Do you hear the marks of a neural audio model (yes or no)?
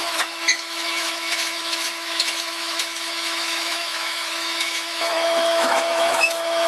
yes